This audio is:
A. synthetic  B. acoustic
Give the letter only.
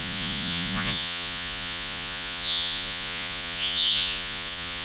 A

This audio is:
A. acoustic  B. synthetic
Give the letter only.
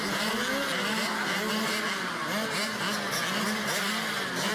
A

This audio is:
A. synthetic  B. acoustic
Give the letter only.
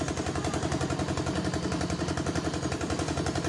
B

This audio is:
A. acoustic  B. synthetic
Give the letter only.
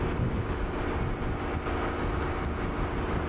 A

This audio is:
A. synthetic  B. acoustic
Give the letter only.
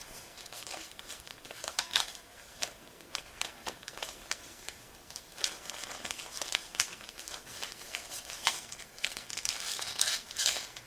A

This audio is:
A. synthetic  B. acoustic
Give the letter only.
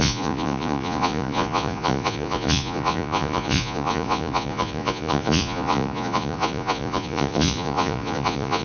A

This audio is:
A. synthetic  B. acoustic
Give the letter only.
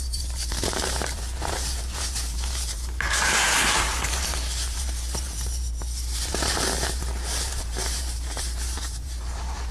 A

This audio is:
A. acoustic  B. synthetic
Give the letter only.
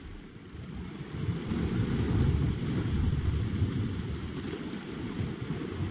A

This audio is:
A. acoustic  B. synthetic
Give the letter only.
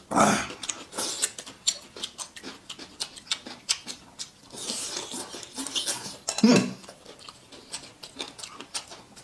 A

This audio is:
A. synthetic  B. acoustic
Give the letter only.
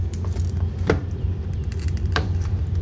A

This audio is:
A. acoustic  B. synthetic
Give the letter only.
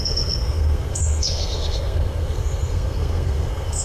B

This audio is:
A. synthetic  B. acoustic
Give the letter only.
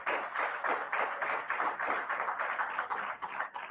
B